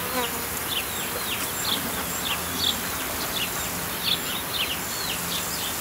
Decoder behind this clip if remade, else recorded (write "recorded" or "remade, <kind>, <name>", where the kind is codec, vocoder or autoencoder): recorded